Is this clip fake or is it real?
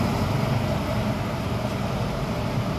real